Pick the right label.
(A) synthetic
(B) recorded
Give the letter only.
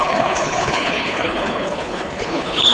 A